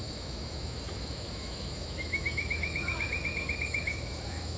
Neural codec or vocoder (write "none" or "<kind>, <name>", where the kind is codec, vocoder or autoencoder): autoencoder, DAC-VAE